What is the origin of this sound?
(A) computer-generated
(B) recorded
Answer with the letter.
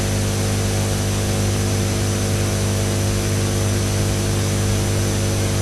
B